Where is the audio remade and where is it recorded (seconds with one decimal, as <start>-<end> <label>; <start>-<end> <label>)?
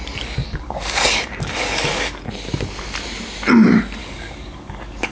0.0-0.4 recorded; 0.4-2.2 remade; 2.2-4.0 recorded; 4.0-5.1 remade